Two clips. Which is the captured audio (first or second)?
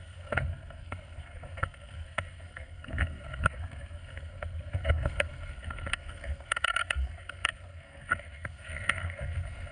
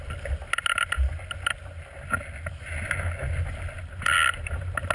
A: second